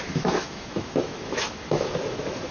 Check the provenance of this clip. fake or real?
fake